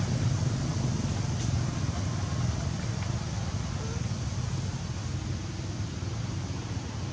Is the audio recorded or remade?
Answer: recorded